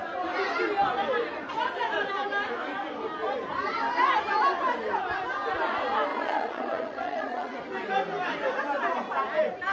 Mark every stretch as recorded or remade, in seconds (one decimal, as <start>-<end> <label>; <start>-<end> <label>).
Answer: 0.0-6.1 recorded; 6.1-7.6 remade; 7.6-9.7 recorded